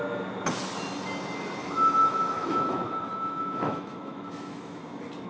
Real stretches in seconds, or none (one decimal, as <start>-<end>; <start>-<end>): 0.0-1.6; 4.8-5.3